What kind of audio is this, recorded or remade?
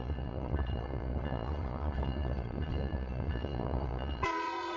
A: remade